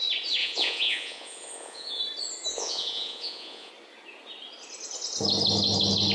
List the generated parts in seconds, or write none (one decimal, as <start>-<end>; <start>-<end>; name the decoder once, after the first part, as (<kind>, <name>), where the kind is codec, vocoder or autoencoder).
0.4-2.0 (vocoder, Vocos); 2.5-3.7